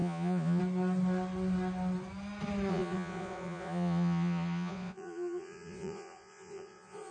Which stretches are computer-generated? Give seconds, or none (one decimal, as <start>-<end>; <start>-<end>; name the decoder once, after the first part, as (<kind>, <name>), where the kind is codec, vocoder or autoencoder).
0.0-0.6 (vocoder, Vocos); 2.7-7.1